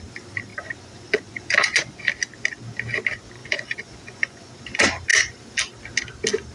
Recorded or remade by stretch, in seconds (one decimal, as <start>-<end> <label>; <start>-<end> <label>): 0.0-0.5 recorded; 0.5-2.0 remade; 2.0-3.4 recorded; 3.4-4.5 remade; 4.5-6.5 recorded